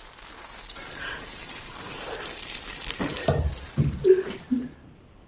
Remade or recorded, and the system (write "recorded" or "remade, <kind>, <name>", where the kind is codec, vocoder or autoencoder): remade, vocoder, BigVGAN v2